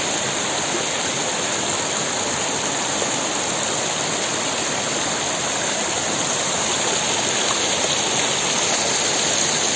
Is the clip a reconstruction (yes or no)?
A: no